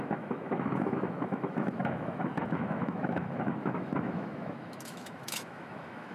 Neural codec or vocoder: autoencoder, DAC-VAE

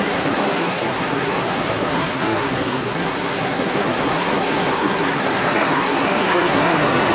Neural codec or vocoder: codec, SNAC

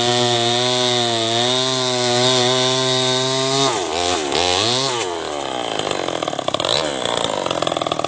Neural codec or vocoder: none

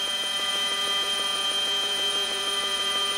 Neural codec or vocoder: vocoder, Vocos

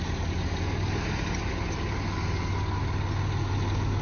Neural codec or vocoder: none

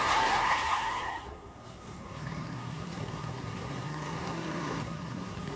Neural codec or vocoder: codec, SNAC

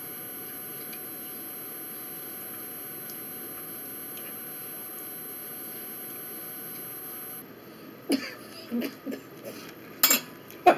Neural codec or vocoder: none